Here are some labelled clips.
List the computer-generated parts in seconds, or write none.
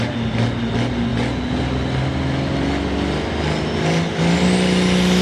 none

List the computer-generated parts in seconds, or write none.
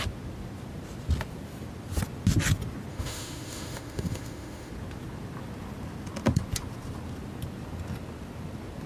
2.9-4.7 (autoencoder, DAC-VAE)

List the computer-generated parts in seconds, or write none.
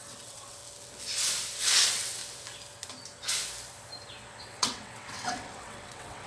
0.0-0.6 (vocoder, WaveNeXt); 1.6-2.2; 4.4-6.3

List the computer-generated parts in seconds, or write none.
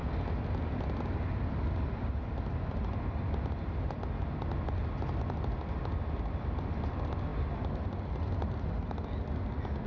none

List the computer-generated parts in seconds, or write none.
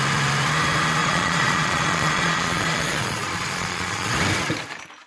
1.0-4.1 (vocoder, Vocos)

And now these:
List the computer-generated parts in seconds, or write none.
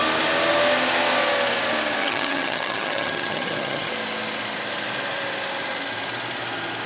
2.0-3.9 (vocoder, HiFi-GAN)